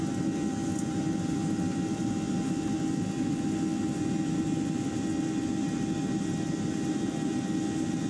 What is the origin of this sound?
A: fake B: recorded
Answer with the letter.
B